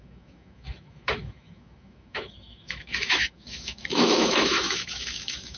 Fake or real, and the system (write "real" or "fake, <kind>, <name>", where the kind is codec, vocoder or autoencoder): fake, autoencoder, DAC-VAE